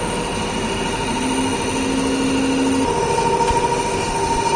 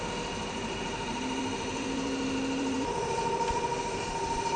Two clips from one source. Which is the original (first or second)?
first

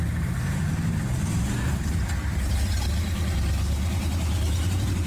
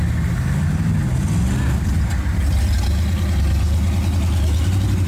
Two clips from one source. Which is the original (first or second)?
second